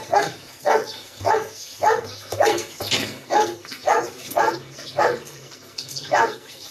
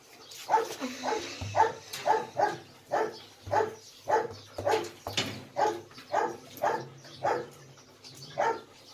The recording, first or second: second